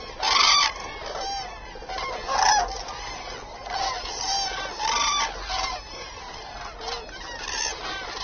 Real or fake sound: real